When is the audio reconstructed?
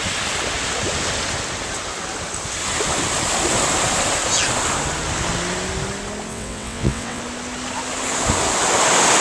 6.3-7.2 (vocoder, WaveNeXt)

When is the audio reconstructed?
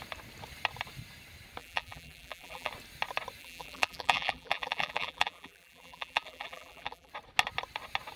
1.6-2.7 (vocoder, BigVGAN v2); 3.4-7.1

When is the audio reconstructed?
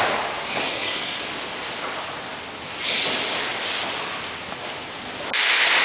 0.7-1.2 (codec, SNAC)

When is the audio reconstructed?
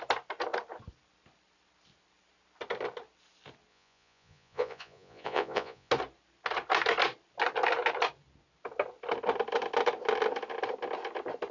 3.7-5.9 (vocoder, Vocos)